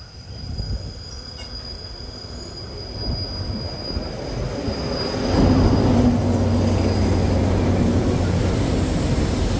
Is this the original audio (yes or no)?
yes